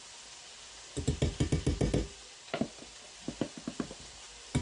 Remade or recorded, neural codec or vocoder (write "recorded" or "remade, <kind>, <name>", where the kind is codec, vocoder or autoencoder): recorded